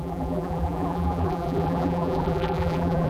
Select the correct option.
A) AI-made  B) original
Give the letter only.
A